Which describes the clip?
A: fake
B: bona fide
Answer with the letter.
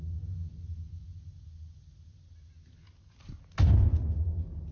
B